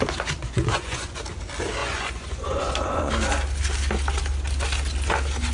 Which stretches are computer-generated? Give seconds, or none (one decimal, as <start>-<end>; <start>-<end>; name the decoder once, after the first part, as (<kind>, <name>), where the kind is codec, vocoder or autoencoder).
0.4-1.2 (vocoder, Vocos); 1.8-3.1